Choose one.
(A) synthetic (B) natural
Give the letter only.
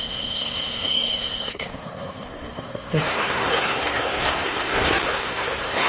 A